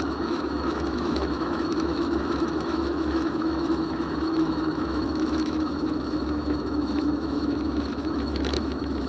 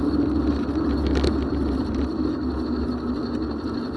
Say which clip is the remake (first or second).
first